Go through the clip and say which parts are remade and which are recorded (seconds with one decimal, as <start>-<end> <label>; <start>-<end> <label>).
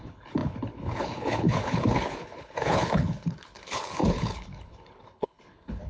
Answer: 0.0-5.9 remade